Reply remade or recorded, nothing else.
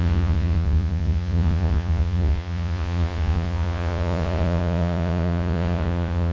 remade